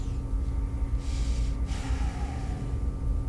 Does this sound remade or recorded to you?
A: recorded